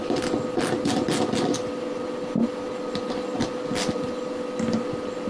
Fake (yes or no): no